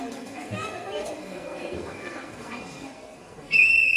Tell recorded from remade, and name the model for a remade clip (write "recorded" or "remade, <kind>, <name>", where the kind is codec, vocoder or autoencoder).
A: remade, codec, SNAC